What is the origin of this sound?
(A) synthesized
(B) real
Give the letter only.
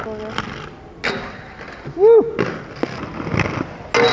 B